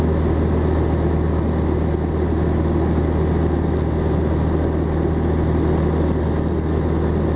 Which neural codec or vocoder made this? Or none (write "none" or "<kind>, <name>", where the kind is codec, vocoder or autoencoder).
none